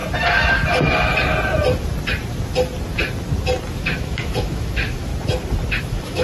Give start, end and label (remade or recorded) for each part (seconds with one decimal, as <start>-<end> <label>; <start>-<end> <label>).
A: 0.0-3.7 recorded; 3.7-5.1 remade; 5.1-5.8 recorded; 5.8-6.2 remade